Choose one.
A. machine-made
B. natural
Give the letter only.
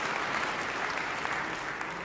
B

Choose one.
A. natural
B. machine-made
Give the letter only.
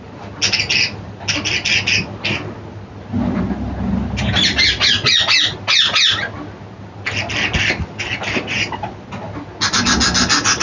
A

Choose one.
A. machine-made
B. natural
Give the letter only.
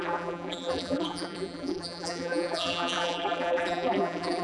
A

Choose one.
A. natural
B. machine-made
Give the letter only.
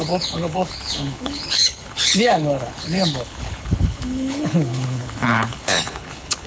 B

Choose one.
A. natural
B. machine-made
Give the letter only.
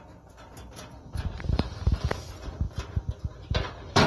B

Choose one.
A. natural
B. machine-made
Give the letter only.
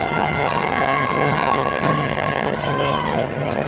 B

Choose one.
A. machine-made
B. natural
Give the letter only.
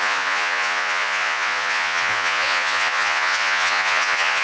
A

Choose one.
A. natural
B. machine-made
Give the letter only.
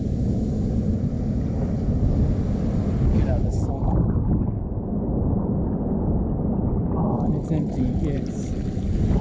A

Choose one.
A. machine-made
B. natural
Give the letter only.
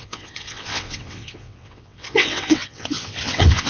A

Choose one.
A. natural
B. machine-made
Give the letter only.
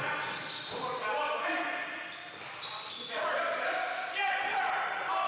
A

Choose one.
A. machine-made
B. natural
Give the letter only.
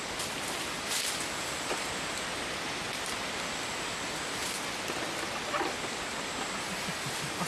B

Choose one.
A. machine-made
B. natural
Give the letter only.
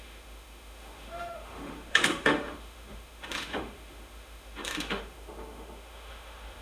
A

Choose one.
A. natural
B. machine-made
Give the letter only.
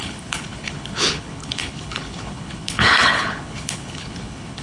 B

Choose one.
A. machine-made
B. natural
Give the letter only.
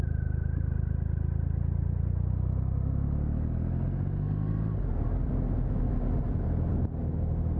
B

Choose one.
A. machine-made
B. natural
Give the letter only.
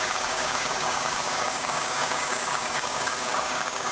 A